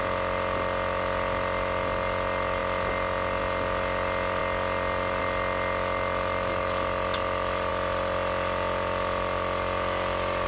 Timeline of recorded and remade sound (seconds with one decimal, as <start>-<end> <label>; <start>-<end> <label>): 0.0-10.5 recorded